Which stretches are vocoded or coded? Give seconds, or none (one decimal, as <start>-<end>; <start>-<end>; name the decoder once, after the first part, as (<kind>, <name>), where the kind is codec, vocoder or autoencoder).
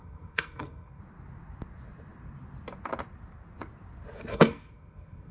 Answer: 0.0-1.0 (codec, SNAC); 4.3-5.3